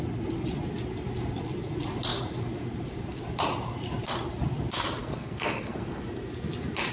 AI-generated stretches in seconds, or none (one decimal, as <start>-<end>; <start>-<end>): 5.0-6.0